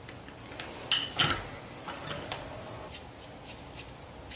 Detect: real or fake real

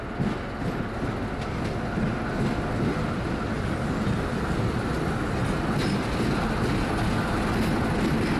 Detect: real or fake real